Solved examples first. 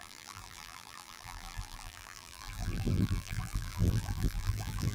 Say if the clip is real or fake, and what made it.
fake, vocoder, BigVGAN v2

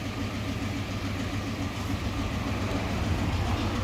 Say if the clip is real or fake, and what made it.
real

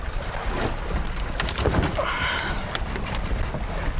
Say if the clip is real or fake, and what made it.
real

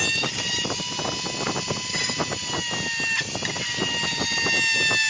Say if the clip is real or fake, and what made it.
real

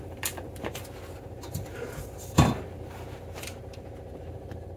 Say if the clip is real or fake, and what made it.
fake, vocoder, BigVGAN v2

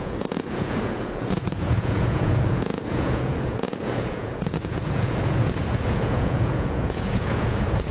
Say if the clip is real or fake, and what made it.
fake, vocoder, Vocos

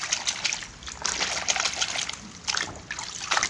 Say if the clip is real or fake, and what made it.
real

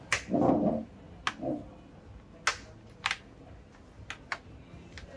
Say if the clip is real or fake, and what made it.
real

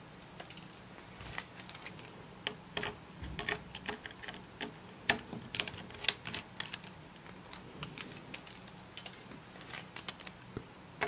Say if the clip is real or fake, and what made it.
real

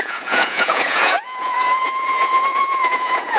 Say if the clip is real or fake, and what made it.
fake, vocoder, Vocos